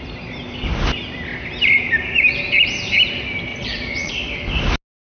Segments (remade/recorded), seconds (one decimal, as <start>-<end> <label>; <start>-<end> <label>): 0.0-3.5 recorded; 3.5-4.1 remade; 4.1-5.2 recorded